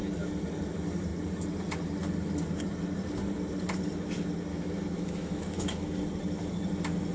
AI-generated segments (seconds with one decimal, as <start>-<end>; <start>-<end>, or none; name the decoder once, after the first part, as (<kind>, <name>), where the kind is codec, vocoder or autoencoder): 4.5-6.0 (autoencoder, DAC-VAE)